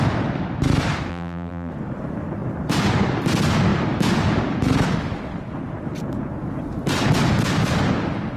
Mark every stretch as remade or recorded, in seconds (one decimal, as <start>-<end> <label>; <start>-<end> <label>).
0.0-1.1 recorded; 1.1-1.7 remade; 1.7-8.4 recorded